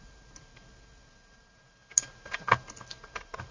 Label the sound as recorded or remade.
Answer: recorded